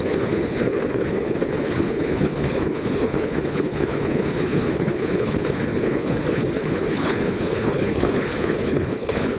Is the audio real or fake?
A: fake